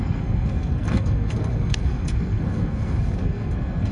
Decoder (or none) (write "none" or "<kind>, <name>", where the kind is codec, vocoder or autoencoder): codec, SNAC